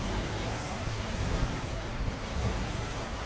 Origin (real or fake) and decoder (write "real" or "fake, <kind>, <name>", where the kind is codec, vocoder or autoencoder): fake, codec, SNAC